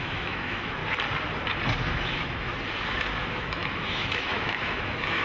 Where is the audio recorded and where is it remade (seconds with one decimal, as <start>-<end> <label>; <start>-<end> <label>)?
0.0-0.8 remade; 0.8-1.9 recorded; 1.9-2.5 remade; 2.5-3.2 recorded; 3.2-5.2 remade